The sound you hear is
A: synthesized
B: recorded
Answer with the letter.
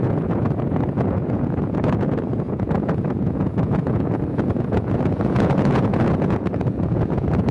A